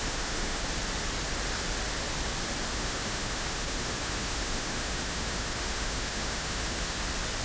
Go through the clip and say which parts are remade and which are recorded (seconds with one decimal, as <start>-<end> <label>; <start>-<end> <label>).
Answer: 0.0-0.6 remade; 0.6-2.7 recorded; 2.7-7.0 remade; 7.0-7.4 recorded